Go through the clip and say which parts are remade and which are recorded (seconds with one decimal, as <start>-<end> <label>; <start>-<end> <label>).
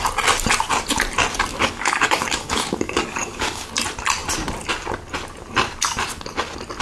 0.0-1.5 recorded; 1.5-3.7 remade; 3.7-6.8 recorded